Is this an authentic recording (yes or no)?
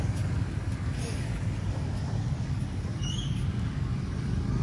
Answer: no